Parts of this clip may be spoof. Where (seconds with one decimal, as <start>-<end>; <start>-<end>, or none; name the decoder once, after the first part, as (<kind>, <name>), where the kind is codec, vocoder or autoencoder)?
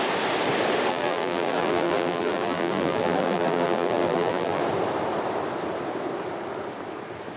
0.9-4.6 (vocoder, BigVGAN v2)